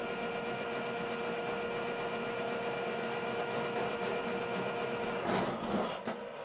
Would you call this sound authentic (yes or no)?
yes